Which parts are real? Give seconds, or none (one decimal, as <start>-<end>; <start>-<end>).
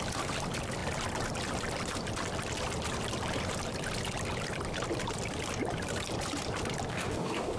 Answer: 0.0-6.9